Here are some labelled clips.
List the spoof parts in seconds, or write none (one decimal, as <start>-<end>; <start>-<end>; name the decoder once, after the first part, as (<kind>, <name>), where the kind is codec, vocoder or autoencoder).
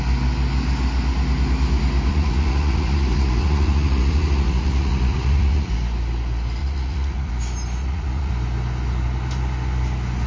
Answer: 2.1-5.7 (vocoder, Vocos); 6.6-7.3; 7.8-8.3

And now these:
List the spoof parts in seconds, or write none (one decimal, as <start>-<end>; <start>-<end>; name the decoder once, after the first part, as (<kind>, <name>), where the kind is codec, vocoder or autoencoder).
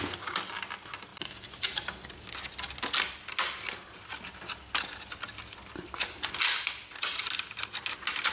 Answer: none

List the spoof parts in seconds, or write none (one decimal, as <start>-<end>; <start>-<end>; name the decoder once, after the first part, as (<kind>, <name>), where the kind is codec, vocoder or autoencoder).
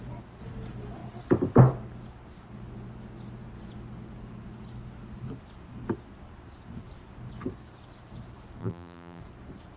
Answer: 8.6-9.2 (vocoder, BigVGAN v2)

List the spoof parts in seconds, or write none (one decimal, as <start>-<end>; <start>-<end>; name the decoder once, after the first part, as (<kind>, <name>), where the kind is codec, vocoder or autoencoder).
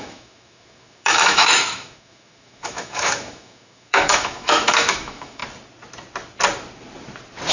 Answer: 0.0-5.4 (autoencoder, DAC-VAE)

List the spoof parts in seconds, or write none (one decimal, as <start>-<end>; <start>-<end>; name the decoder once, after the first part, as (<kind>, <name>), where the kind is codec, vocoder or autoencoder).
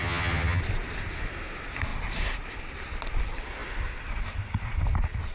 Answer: 0.0-0.6 (vocoder, HiFi-GAN)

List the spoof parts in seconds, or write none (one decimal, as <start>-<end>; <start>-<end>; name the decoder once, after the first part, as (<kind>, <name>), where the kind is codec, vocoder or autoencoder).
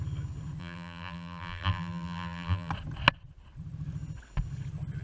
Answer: 0.6-2.7 (vocoder, BigVGAN v2)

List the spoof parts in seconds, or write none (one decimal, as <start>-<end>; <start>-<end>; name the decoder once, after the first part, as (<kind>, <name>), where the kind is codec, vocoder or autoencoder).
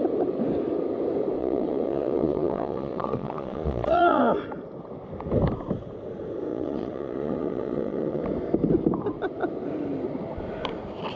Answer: 1.4-4.2 (vocoder, Vocos); 6.5-8.2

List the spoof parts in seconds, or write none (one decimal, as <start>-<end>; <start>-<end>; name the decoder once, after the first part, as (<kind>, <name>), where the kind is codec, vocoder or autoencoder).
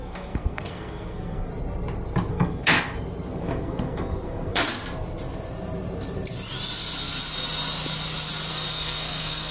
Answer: 0.0-1.5 (codec, SNAC); 2.3-2.7; 3.3-4.7; 8.5-9.5